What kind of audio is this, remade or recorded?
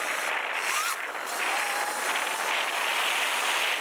recorded